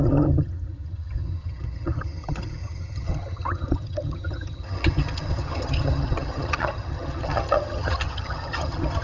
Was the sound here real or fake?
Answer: fake